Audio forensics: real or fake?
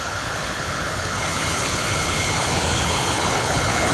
fake